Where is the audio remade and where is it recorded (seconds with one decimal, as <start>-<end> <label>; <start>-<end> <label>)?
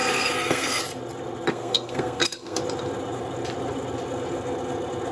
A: 0.0-0.8 remade; 0.8-1.5 recorded; 1.5-2.6 remade; 2.6-5.1 recorded